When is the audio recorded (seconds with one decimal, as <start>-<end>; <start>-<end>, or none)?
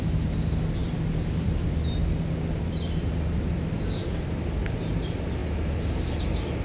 0.0-0.8; 4.8-6.6